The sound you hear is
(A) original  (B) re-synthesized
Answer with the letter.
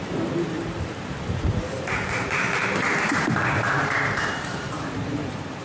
B